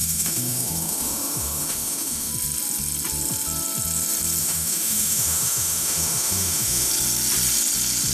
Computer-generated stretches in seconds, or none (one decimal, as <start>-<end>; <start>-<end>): 0.0-2.3; 4.4-6.9